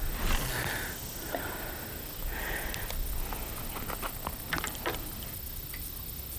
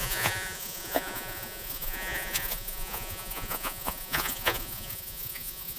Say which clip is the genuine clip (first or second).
first